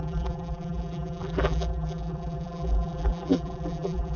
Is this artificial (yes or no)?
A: yes